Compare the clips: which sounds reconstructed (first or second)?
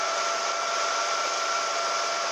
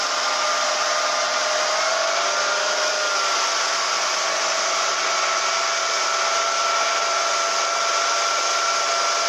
first